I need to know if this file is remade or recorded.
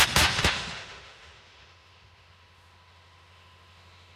remade